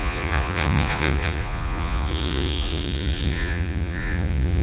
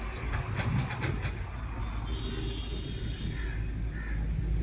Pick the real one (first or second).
second